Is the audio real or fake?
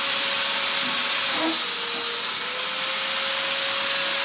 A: real